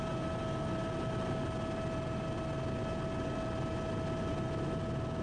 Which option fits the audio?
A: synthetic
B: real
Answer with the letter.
B